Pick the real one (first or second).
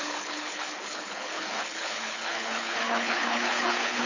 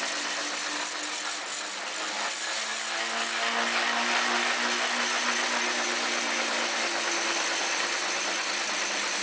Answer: second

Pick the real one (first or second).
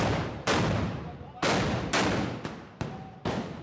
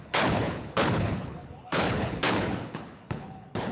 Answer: first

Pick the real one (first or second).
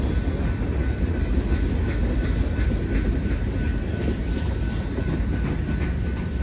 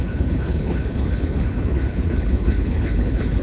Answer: first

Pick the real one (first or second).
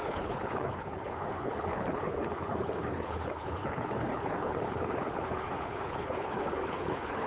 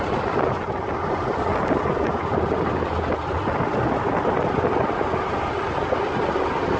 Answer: second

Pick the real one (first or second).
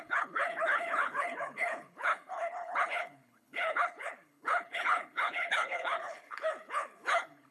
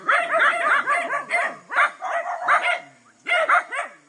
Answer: second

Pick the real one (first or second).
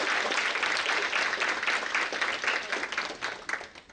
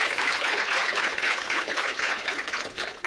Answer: first